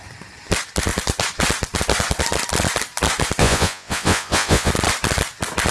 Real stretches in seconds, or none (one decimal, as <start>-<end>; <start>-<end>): 0.0-3.4; 4.7-5.7